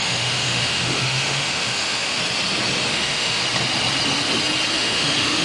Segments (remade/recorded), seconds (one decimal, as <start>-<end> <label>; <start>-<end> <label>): 0.0-2.2 remade; 2.2-2.9 recorded; 2.9-3.4 remade; 3.4-4.7 recorded; 4.7-5.4 remade